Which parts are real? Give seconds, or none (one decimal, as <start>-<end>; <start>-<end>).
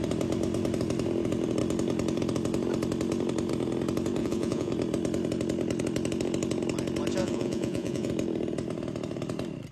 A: 0.0-4.2; 4.7-7.2; 8.1-9.7